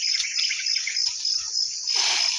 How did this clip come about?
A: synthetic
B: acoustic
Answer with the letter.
B